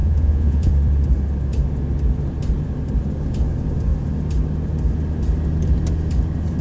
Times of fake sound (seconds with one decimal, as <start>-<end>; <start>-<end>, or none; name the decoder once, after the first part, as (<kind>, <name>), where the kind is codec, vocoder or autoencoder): 0.0-0.7 (vocoder, Vocos)